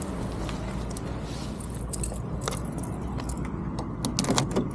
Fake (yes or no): no